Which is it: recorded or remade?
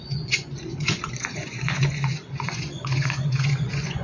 remade